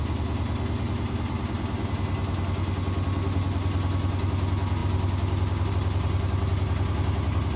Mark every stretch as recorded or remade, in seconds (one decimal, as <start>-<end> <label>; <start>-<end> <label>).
0.0-7.6 recorded